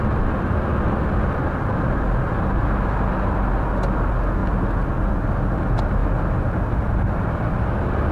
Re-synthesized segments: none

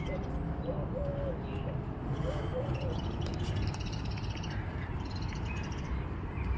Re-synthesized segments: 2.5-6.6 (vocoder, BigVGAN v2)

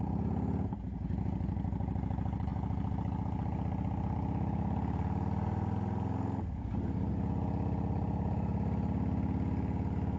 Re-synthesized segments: none

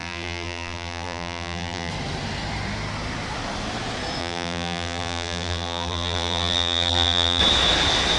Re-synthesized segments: 0.0-1.9 (vocoder, BigVGAN v2); 4.2-7.4